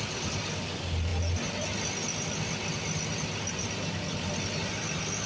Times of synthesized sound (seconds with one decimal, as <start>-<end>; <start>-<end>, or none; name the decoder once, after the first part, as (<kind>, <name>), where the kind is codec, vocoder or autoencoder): none